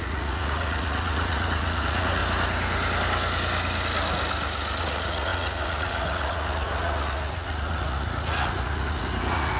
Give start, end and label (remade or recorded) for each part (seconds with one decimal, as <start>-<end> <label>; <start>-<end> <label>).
0.0-2.2 remade; 2.2-4.8 recorded; 4.8-9.6 remade